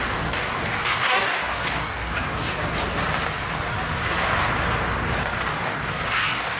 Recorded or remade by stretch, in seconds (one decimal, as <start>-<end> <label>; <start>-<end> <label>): 0.0-2.6 remade; 2.6-5.5 recorded; 5.5-6.6 remade